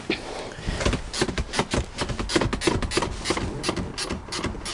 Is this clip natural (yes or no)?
yes